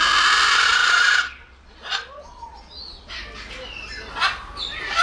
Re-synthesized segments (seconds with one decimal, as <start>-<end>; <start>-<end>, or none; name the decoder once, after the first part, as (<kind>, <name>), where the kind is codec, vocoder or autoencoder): 0.8-3.1 (vocoder, Vocos)